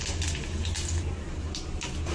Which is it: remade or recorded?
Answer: recorded